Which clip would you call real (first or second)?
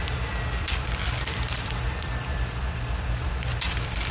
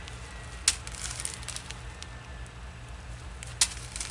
second